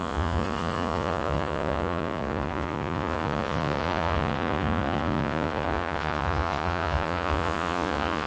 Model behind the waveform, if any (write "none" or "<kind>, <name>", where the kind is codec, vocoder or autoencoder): vocoder, Vocos